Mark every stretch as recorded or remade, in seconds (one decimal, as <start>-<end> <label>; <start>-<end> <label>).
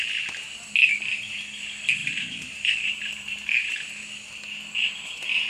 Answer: 0.0-2.0 recorded; 2.0-3.8 remade; 3.8-5.5 recorded